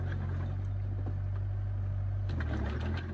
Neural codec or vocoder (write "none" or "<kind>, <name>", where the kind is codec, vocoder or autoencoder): none